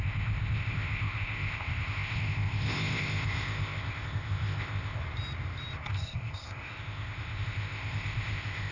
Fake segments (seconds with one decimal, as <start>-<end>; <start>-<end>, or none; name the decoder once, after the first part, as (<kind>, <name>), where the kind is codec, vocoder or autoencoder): 0.0-5.0 (codec, ZipCodec); 5.9-8.7